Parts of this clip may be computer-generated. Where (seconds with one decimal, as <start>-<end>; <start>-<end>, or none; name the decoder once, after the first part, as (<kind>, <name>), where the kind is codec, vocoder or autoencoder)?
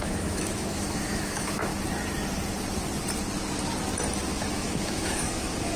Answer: 0.0-1.7 (autoencoder, DAC-VAE); 4.5-5.8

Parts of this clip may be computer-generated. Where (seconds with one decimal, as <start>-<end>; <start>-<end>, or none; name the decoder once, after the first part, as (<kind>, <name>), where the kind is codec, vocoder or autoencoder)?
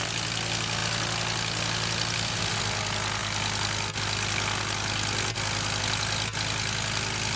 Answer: none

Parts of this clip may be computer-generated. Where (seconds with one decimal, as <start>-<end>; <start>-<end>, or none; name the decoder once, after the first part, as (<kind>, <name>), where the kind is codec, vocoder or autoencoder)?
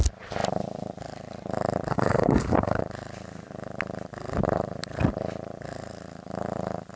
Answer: 1.9-2.8 (codec, SNAC)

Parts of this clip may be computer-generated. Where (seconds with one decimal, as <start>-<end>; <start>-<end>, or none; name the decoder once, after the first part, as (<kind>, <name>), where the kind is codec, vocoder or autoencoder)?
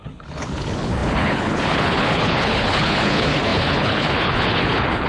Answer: 0.0-5.1 (codec, HILCodec)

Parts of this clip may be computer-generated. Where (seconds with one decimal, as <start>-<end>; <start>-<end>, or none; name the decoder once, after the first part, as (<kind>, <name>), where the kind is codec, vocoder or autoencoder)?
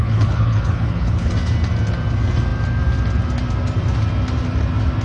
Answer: 0.0-1.3 (codec, HILCodec)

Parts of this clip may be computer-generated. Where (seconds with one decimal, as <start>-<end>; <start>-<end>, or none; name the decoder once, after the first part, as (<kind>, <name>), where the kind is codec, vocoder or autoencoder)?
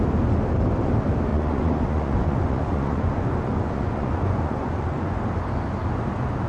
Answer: 1.3-5.2 (vocoder, Vocos)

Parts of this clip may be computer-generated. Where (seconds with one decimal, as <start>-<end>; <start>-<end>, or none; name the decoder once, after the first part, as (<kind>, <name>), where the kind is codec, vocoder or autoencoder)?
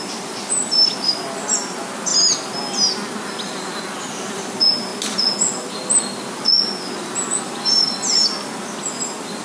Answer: 0.0-0.6 (vocoder, BigVGAN v2); 1.6-2.1; 4.3-4.9; 7.4-9.4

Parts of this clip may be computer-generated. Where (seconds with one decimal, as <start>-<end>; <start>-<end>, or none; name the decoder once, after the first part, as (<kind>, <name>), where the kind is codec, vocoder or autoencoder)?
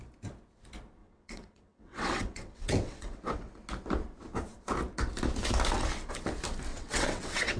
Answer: 1.0-3.5 (vocoder, WaveNeXt); 6.7-7.6